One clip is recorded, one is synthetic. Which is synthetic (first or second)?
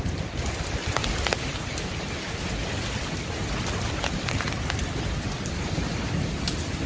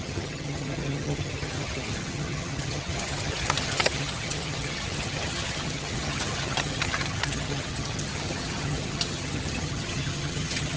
second